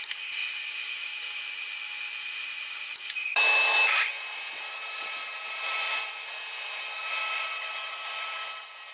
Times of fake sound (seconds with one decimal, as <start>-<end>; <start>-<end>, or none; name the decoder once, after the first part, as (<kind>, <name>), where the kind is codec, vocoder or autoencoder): none